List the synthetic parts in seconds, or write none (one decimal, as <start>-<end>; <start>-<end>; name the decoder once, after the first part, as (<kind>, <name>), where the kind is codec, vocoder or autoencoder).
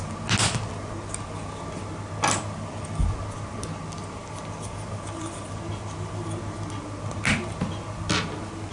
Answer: none